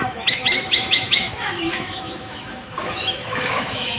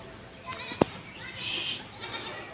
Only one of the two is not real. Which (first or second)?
first